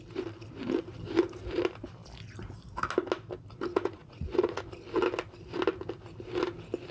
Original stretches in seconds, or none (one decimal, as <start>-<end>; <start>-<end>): 0.0-3.7; 4.6-6.9